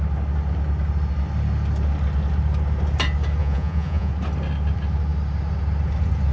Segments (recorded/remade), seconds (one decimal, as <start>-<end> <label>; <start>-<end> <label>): 0.0-3.4 recorded; 3.4-4.1 remade; 4.1-6.3 recorded